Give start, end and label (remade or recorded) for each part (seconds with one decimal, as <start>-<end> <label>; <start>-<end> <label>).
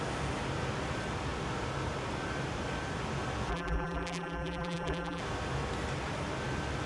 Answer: 0.0-3.5 recorded; 3.5-5.2 remade; 5.2-6.9 recorded